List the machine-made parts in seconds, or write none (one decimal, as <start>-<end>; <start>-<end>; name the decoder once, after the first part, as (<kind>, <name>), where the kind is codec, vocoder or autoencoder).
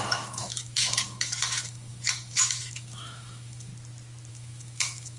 0.0-3.7 (autoencoder, DAC-VAE); 4.3-5.2